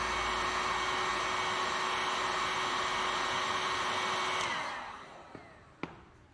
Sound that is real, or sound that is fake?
real